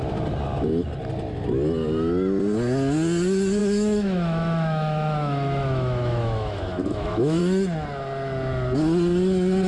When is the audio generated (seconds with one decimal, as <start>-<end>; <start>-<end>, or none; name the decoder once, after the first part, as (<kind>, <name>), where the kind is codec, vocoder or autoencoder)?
3.6-7.4 (autoencoder, DAC-VAE)